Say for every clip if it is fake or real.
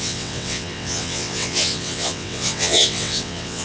fake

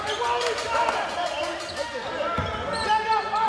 real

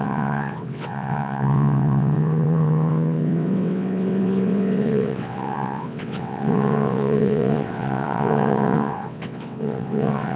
fake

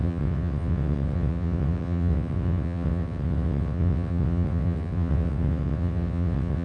fake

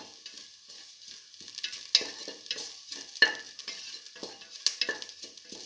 real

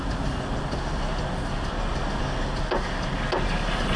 real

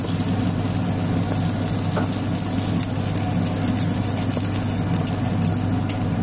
real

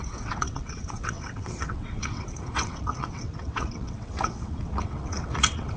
fake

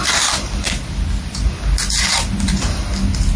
real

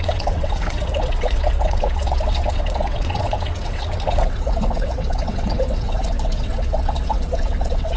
fake